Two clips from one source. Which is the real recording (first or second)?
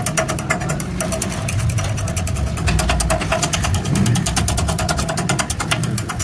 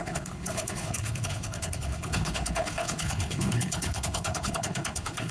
first